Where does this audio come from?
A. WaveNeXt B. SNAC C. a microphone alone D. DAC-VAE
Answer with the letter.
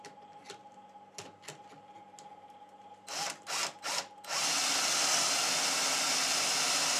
C